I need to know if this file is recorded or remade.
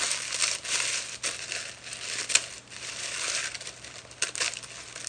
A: recorded